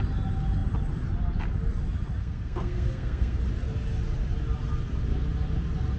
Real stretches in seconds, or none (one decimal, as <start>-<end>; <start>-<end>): 0.0-2.2; 3.4-6.0